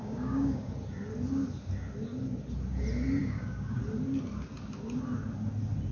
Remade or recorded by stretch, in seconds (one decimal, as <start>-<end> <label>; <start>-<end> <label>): 0.0-0.7 remade; 0.7-3.2 recorded; 3.2-3.8 remade; 3.8-5.9 recorded